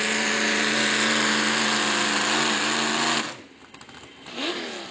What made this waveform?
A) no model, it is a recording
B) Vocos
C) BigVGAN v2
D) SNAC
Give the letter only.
A